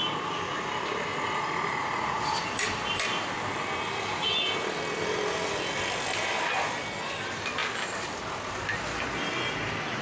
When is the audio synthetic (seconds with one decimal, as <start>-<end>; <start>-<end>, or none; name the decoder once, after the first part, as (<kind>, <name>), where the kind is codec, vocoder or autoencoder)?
1.1-2.2 (vocoder, Vocos)